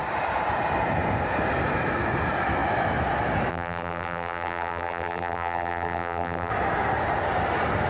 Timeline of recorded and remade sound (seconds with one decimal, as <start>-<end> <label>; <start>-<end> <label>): 0.0-3.5 recorded; 3.5-6.5 remade; 6.5-7.9 recorded